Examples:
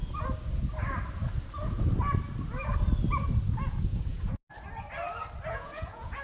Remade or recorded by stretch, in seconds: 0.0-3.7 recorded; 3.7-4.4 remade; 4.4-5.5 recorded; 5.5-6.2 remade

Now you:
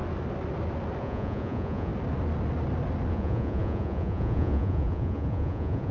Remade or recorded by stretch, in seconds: 0.0-1.0 recorded; 1.0-1.9 remade; 1.9-3.1 recorded; 3.1-5.9 remade